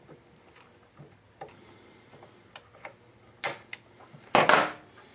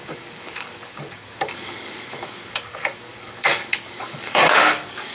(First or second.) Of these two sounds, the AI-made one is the second